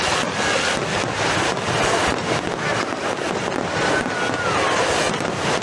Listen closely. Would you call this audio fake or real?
real